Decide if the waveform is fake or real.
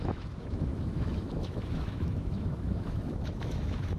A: fake